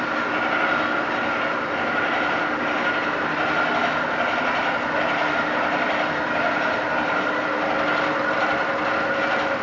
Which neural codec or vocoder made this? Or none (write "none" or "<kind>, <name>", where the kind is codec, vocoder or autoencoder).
none